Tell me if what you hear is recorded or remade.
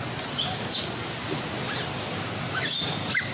recorded